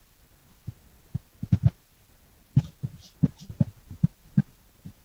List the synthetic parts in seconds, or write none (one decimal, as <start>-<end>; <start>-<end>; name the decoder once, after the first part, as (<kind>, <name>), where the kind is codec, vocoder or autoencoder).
0.0-0.4 (vocoder, BigVGAN v2); 3.4-5.0